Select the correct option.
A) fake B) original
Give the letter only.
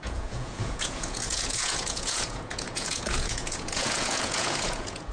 A